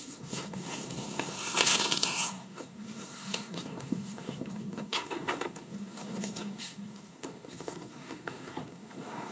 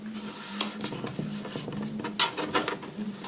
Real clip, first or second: second